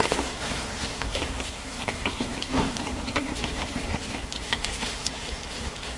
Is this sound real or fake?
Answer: fake